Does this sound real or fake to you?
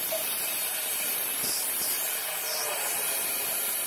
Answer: real